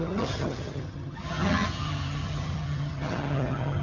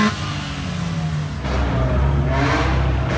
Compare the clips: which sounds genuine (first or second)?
second